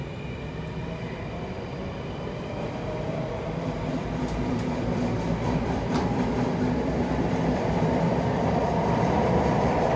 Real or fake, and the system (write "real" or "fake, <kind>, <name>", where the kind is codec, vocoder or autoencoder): fake, vocoder, BigVGAN v2